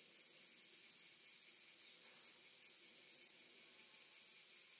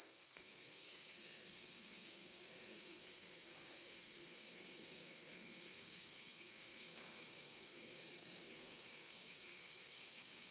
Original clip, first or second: first